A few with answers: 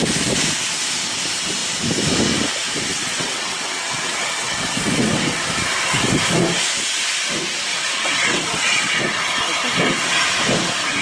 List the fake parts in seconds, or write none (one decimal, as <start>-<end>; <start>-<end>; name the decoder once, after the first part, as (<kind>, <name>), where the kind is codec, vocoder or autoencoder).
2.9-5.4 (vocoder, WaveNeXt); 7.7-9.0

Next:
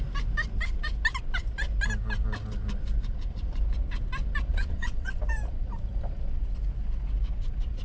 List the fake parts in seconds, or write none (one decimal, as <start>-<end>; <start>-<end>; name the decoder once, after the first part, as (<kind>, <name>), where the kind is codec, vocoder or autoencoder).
4.5-5.2 (vocoder, WaveNeXt)

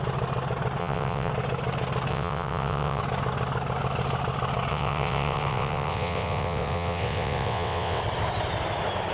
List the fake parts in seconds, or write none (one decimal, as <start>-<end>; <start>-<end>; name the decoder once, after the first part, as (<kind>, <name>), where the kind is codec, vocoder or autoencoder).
0.8-1.3 (vocoder, WaveNeXt); 2.1-3.0; 4.7-8.0

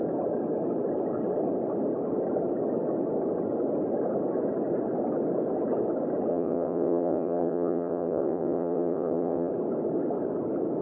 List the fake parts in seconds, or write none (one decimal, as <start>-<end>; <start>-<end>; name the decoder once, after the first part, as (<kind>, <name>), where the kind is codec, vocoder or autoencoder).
6.3-9.5 (vocoder, WaveNeXt)

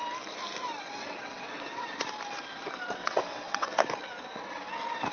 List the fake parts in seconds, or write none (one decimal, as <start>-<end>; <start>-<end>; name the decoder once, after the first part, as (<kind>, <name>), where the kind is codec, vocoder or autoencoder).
1.0-2.0 (vocoder, WaveNeXt); 3.0-3.8

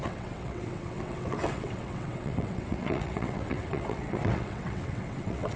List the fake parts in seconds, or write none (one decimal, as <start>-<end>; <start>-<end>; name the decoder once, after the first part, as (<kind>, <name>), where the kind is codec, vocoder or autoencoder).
0.0-5.6 (vocoder, WaveNeXt)

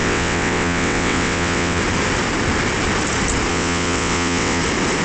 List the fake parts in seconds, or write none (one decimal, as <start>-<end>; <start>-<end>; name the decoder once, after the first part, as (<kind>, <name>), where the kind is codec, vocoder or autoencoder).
0.0-1.8 (vocoder, WaveNeXt); 3.5-4.6